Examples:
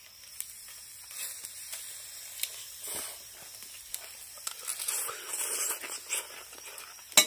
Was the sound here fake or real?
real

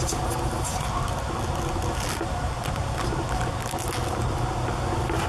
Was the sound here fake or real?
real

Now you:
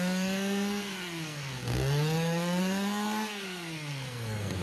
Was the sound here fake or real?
fake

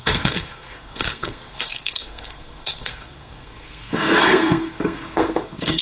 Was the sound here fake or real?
fake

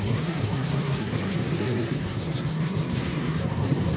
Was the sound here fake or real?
fake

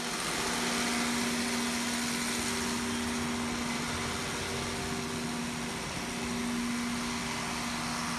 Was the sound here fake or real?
real